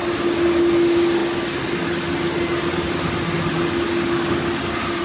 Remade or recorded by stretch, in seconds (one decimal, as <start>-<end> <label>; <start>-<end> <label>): 0.0-5.0 recorded